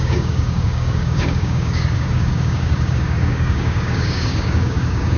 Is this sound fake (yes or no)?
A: yes